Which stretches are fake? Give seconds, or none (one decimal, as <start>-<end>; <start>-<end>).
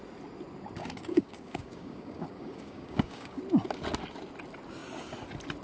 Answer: 0.8-3.4